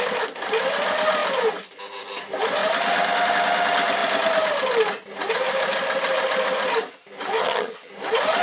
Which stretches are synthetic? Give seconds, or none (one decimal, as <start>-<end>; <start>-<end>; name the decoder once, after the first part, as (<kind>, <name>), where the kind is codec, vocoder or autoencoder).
7.4-7.9 (vocoder, HiFi-GAN)